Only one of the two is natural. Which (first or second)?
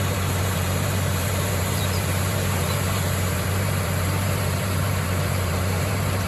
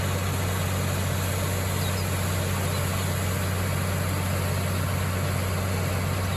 second